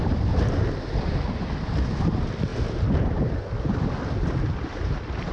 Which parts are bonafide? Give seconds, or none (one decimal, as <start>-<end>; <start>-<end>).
0.0-5.3